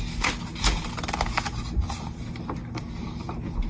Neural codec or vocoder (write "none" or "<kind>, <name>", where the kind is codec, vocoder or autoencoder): none